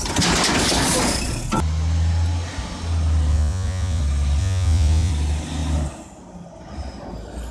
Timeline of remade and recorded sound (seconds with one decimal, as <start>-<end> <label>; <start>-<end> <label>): 0.0-3.3 recorded; 3.3-4.0 remade; 4.0-4.4 recorded; 4.4-5.1 remade; 5.1-7.5 recorded

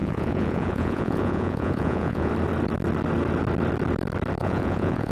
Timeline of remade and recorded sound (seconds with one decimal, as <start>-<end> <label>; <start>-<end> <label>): 0.0-2.3 remade; 2.3-4.4 recorded; 4.4-5.1 remade

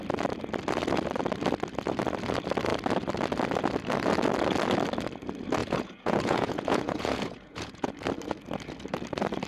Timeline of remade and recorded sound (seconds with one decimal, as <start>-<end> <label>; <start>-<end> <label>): 0.0-5.6 recorded; 5.6-7.9 remade; 7.9-9.5 recorded

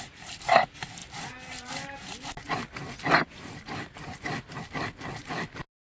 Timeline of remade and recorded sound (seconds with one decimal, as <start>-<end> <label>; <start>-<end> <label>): 0.0-6.0 recorded

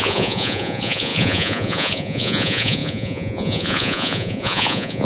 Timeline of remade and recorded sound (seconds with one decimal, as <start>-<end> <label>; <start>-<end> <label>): 0.0-5.0 remade

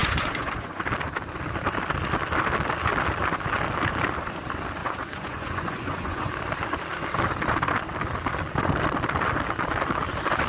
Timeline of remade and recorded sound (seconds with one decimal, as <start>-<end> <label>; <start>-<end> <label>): 0.0-0.8 remade; 0.8-4.8 recorded; 4.8-6.3 remade; 6.3-10.5 recorded